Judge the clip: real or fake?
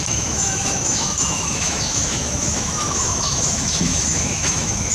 fake